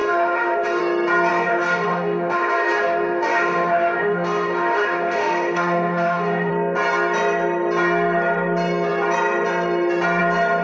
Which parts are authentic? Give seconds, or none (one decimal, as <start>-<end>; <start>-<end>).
0.8-1.3; 6.5-10.6